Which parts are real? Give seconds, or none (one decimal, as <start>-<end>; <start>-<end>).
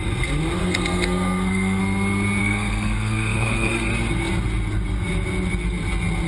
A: 0.0-0.6; 1.8-2.4; 3.9-6.3